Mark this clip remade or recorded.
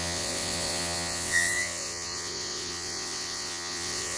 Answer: remade